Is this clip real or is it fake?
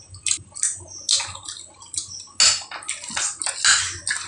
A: real